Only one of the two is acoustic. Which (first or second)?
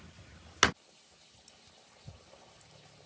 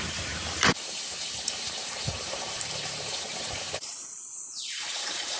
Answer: first